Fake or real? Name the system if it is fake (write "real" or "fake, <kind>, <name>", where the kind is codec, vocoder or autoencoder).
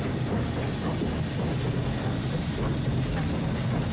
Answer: real